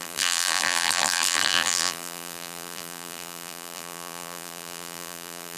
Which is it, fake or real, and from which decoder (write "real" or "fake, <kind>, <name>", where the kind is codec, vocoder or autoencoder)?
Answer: fake, vocoder, BigVGAN v2